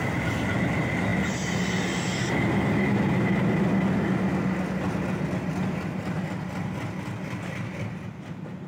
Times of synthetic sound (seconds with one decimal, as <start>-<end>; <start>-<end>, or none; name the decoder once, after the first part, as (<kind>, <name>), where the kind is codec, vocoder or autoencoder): none